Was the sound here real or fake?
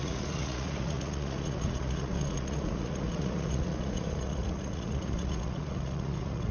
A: fake